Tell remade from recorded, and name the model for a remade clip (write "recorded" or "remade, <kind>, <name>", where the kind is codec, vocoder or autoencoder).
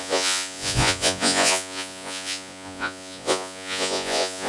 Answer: remade, vocoder, Vocos